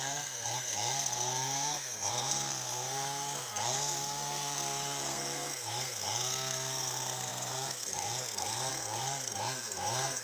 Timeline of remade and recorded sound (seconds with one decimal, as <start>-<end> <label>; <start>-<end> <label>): 0.0-10.2 remade